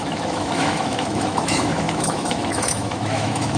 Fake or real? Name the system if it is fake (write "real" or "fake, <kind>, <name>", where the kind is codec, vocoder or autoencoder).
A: fake, autoencoder, DAC-VAE